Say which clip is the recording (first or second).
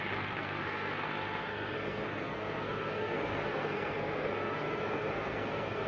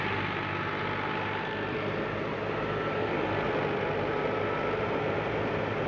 second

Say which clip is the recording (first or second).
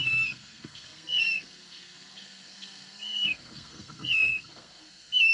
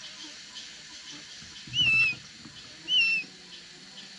second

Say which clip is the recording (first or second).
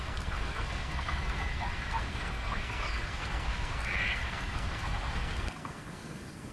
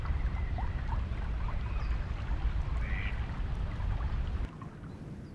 second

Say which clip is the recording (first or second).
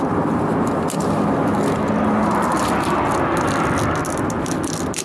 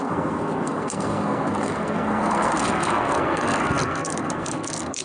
first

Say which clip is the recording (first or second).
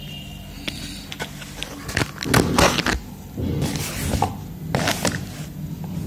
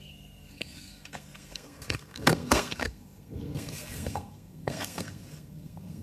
first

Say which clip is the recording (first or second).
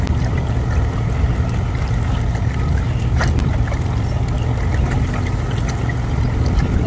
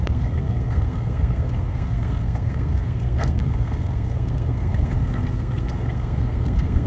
first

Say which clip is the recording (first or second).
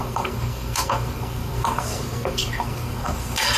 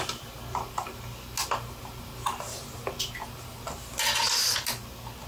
second